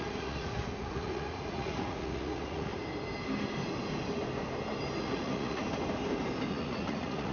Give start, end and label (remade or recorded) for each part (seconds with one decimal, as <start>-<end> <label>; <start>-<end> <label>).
0.0-2.7 remade; 2.7-5.0 recorded; 5.0-5.6 remade; 5.6-6.5 recorded; 6.5-7.3 remade